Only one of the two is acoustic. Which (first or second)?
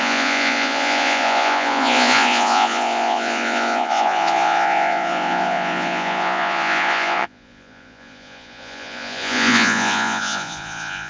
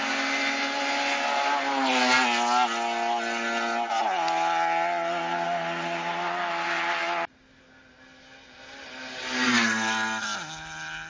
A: second